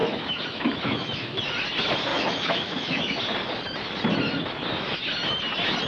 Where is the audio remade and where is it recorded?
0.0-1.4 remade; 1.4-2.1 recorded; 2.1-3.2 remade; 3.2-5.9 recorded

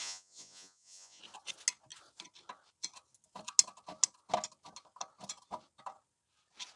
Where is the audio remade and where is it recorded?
0.0-1.2 remade; 1.2-6.8 recorded